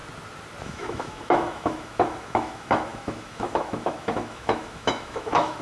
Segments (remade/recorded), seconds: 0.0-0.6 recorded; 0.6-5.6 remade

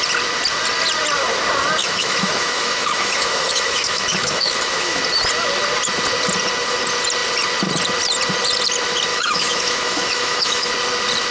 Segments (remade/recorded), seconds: 0.0-1.8 recorded; 1.8-5.0 remade; 5.0-9.1 recorded; 9.1-10.7 remade; 10.7-11.3 recorded

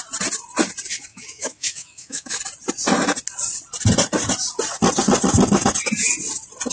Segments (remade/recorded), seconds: 0.0-1.1 recorded; 1.1-2.4 remade; 2.4-6.7 recorded